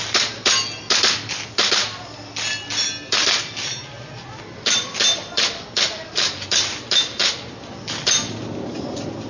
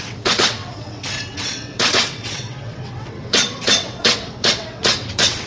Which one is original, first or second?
first